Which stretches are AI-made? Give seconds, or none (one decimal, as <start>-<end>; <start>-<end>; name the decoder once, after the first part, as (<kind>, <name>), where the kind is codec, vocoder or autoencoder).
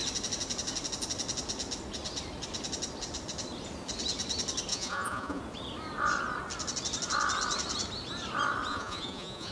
4.7-5.4 (vocoder, Vocos); 8.7-9.5